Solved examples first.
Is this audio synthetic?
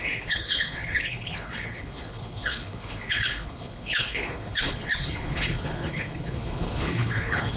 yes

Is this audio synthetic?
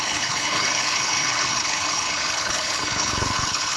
yes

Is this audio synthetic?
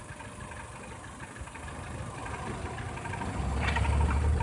no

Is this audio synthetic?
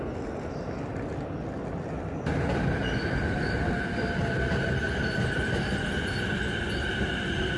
no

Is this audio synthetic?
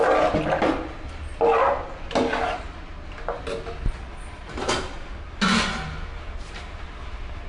no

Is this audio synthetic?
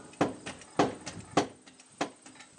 no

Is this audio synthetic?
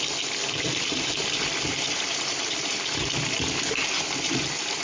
no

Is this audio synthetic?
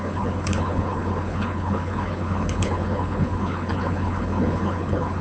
yes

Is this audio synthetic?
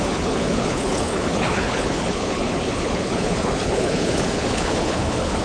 yes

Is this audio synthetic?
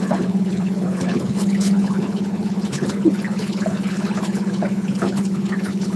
yes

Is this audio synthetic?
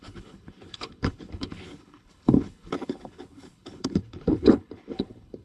yes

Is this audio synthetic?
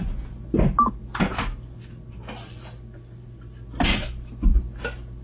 no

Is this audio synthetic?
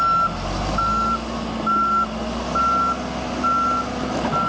no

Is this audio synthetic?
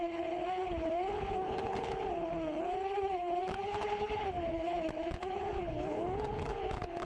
yes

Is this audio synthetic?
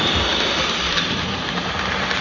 no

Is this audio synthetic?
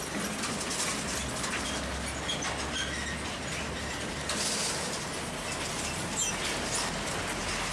no